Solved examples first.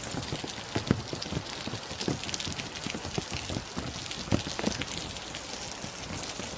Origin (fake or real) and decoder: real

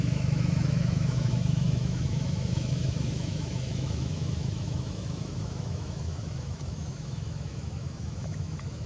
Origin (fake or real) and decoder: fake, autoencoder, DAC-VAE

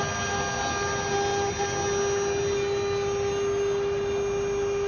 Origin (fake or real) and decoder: real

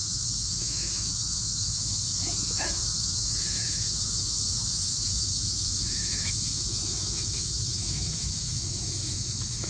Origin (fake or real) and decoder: fake, autoencoder, DAC-VAE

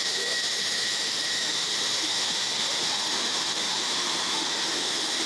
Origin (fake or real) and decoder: fake, autoencoder, DAC-VAE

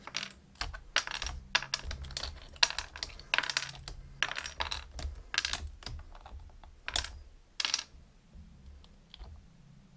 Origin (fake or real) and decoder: real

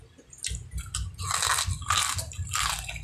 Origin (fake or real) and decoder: real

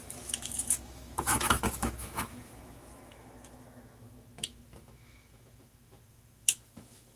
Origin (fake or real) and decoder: fake, autoencoder, DAC-VAE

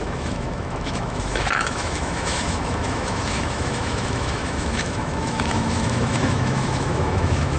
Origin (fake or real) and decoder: fake, autoencoder, DAC-VAE